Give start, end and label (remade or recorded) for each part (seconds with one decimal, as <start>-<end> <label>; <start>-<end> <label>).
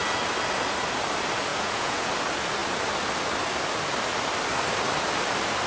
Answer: 0.0-1.5 recorded; 1.5-2.1 remade; 2.1-5.7 recorded